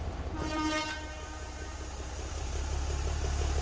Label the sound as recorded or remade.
remade